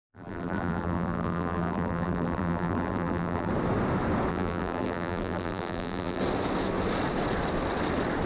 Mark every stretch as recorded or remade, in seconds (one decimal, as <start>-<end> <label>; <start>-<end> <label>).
0.0-3.5 remade; 3.5-4.3 recorded; 4.3-6.2 remade; 6.2-8.3 recorded